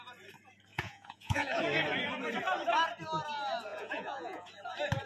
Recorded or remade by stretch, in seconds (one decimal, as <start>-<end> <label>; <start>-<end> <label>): 0.0-0.7 recorded; 0.7-1.6 remade; 1.6-3.7 recorded; 3.7-4.5 remade; 4.5-5.1 recorded